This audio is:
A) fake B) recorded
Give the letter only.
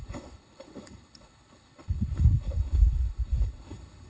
A